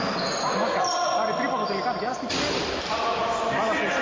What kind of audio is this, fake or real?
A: real